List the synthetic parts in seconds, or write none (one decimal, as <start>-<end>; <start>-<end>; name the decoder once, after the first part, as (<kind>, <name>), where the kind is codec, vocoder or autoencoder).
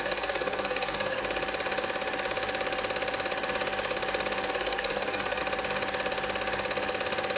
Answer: 0.0-1.2 (codec, SNAC); 4.5-5.4